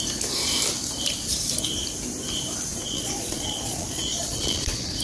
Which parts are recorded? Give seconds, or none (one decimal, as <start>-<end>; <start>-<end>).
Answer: 0.0-2.7